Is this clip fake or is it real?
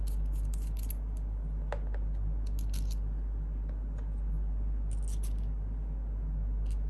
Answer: real